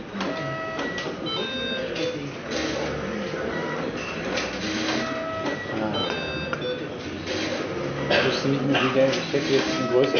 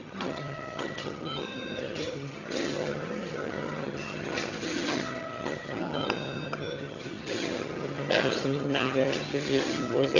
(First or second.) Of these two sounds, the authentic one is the first